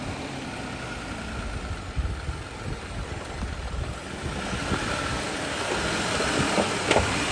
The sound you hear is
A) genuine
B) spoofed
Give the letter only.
A